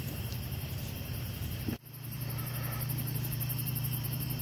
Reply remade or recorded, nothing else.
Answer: remade